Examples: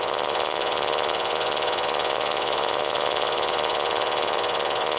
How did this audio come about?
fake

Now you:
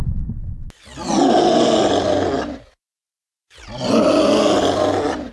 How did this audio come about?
real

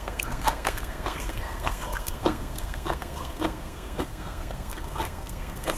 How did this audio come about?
fake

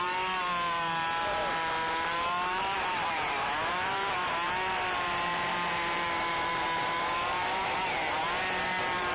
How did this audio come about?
fake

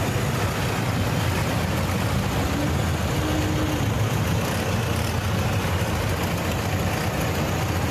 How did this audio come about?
real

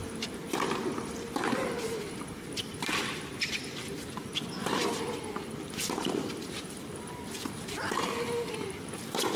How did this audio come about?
fake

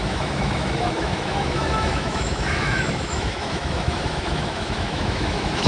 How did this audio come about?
fake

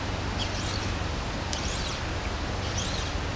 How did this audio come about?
real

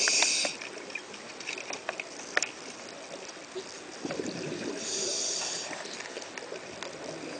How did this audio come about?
real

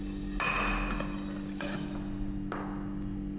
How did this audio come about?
real